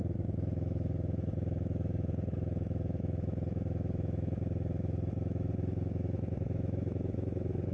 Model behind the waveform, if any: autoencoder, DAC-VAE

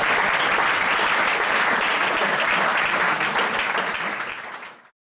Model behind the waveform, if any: none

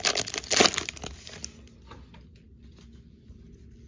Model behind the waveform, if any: none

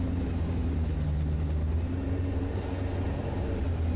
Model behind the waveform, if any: none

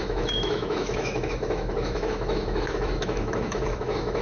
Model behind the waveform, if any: autoencoder, DAC-VAE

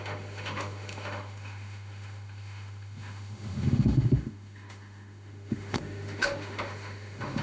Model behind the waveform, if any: autoencoder, DAC-VAE